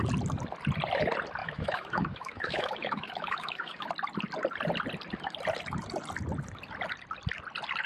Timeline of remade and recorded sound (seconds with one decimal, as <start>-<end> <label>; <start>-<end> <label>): 0.0-1.4 recorded; 1.4-3.9 remade; 3.9-7.9 recorded